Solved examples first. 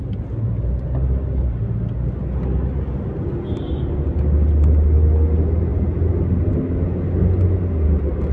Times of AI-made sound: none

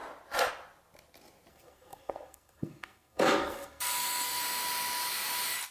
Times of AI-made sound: 1.5-4.4 (codec, SNAC)

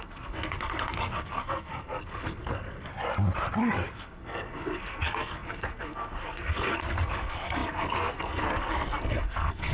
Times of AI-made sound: 0.0-2.9 (codec, SNAC); 3.9-9.7